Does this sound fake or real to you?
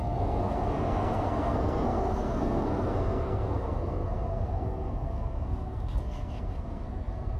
fake